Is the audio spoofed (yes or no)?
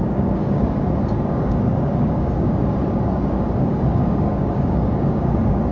yes